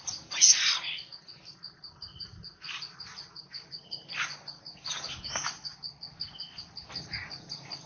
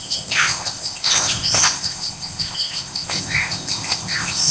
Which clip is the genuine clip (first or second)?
first